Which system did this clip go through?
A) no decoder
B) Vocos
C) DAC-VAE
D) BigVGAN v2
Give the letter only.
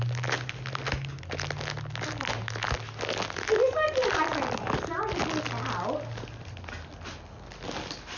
A